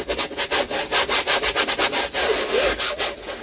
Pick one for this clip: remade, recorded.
recorded